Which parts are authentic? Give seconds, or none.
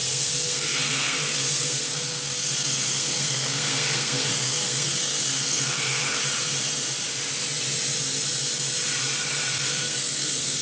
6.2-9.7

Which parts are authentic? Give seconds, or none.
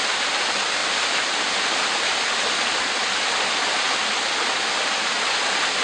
0.0-5.8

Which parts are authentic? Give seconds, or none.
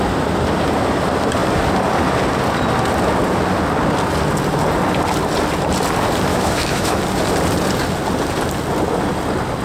0.0-6.3; 7.0-9.6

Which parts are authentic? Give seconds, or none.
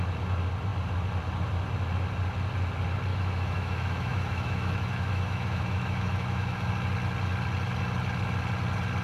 0.0-3.1; 6.7-9.0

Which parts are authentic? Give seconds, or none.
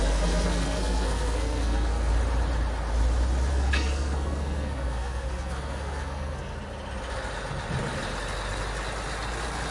2.1-3.5; 6.5-9.7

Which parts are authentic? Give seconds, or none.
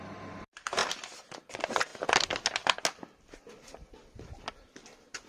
1.9-5.3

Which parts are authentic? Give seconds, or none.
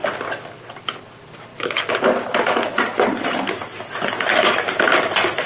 0.0-1.5; 4.8-5.5